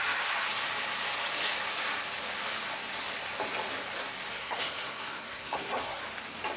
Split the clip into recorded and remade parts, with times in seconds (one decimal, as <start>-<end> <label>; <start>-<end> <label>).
0.0-4.3 recorded; 4.3-6.0 remade; 6.0-6.6 recorded